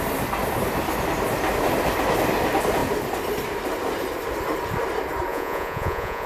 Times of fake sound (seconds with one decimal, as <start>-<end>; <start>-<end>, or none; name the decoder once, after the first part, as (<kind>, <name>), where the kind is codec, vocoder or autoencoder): 5.3-6.3 (vocoder, Vocos)